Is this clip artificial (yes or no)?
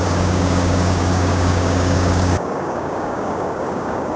yes